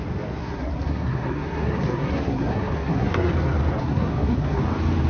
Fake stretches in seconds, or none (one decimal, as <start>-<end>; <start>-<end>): 0.4-3.3; 3.8-4.6